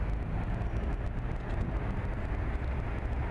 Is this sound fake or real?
real